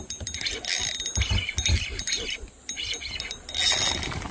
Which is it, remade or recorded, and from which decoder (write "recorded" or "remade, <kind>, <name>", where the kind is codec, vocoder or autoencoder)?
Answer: recorded